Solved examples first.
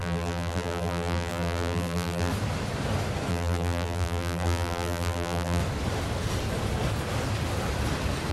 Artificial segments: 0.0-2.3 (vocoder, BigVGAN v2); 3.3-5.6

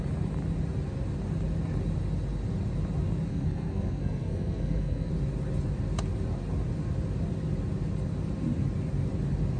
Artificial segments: 3.3-5.1 (codec, SNAC)

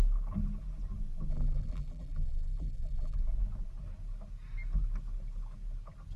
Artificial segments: 1.3-3.2 (vocoder, BigVGAN v2)

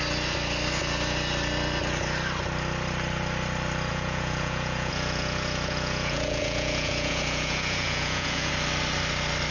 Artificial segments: 3.9-8.5 (vocoder, Vocos)

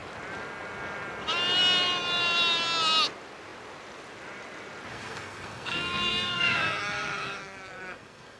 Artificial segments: 4.9-8.4 (codec, SNAC)

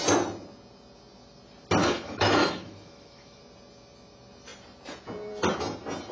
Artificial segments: 1.8-3.4 (autoencoder, DAC-VAE)